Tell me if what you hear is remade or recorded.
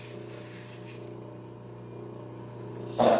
recorded